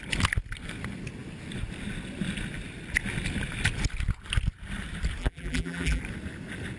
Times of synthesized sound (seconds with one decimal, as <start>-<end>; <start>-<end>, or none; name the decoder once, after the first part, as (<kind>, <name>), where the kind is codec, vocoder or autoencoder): 5.2-6.0 (vocoder, BigVGAN v2)